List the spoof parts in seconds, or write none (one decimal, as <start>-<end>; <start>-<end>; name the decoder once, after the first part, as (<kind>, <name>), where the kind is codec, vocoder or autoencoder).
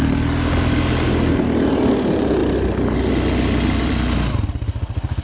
none